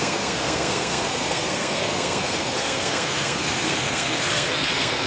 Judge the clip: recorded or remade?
remade